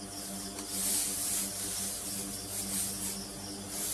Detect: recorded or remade recorded